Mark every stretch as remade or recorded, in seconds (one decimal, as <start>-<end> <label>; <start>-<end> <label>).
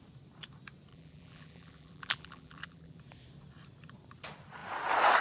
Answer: 0.0-0.9 recorded; 0.9-3.0 remade; 3.0-5.2 recorded